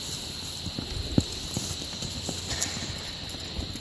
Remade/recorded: recorded